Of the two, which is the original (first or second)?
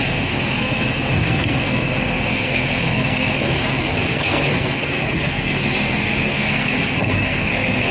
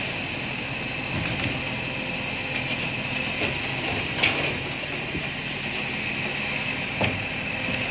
second